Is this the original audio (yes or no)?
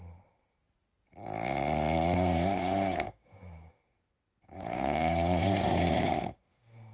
yes